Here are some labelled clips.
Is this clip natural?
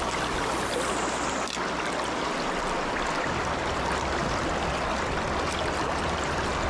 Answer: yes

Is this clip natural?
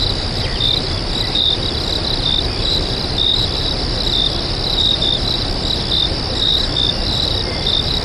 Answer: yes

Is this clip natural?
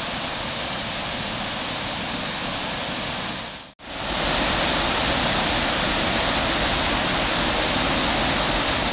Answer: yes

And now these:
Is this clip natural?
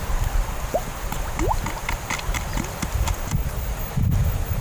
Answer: yes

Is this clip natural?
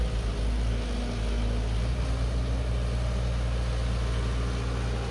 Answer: yes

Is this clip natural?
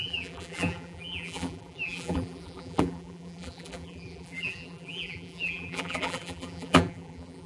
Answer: no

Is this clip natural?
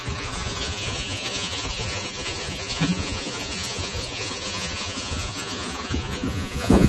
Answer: no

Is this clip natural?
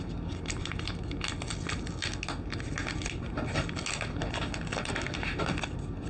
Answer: yes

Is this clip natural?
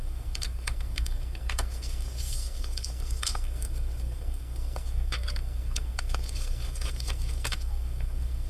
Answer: no